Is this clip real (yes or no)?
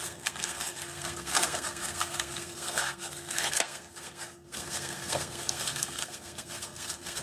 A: no